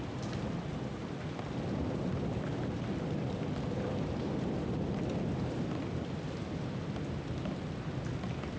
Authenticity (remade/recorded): recorded